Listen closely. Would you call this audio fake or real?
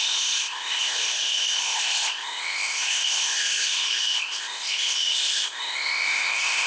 fake